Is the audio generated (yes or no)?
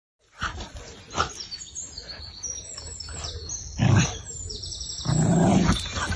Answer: no